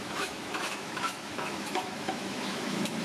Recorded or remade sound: remade